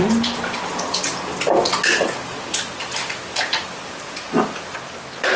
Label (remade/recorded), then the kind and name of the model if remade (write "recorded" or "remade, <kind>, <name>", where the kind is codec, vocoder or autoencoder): recorded